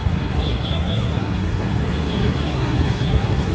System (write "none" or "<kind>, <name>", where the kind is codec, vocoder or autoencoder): codec, SNAC